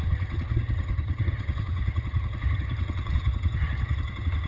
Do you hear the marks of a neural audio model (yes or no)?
yes